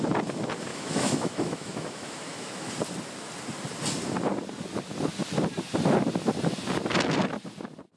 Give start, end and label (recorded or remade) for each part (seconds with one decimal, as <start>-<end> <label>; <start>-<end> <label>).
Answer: 0.0-0.7 recorded; 0.7-2.7 remade; 2.7-8.0 recorded